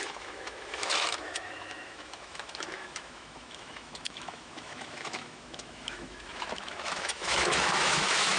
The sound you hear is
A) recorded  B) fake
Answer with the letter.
B